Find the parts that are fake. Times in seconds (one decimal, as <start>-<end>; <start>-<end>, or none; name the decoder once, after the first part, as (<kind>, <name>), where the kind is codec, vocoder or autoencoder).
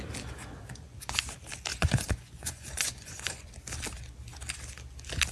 0.4-1.2 (vocoder, Vocos); 1.7-3.5